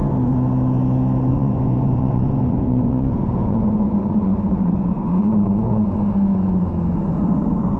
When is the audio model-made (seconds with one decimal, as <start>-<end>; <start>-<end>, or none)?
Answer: 1.3-6.0; 6.9-7.8